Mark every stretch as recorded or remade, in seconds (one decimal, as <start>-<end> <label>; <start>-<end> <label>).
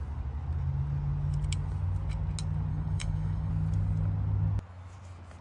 0.0-2.7 recorded; 2.7-3.5 remade; 3.5-5.4 recorded